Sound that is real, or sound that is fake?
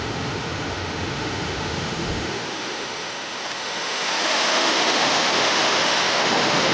fake